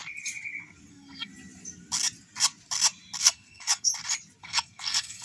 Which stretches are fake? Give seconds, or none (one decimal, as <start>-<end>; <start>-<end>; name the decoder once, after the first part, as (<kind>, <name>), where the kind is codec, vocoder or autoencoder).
0.9-1.3 (codec, SNAC); 3.2-3.9; 4.4-5.2